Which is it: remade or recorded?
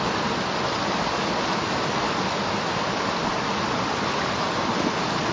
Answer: recorded